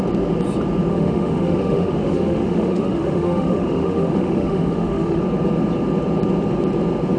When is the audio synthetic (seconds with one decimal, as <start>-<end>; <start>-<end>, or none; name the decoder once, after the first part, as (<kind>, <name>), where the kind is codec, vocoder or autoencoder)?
0.9-5.2 (autoencoder, DAC-VAE)